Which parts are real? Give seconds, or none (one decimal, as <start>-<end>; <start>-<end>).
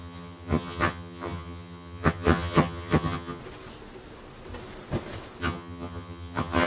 3.4-5.4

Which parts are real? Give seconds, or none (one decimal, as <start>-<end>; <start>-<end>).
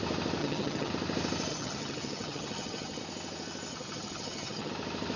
0.0-0.4; 0.9-1.5; 3.0-3.7; 4.7-5.2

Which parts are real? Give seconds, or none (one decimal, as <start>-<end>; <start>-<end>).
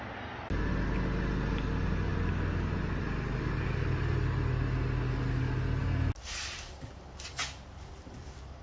0.0-8.6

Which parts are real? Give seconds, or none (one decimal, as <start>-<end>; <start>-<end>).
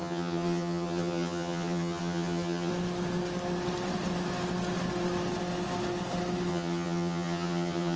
2.7-6.5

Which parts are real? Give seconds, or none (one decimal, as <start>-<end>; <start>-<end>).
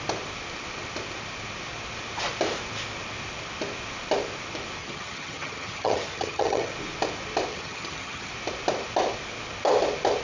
0.0-4.8; 6.7-7.5; 8.3-10.2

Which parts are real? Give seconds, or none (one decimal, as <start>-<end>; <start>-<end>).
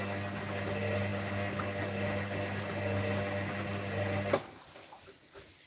0.0-5.7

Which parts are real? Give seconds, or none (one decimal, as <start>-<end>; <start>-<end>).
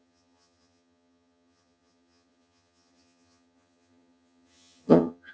none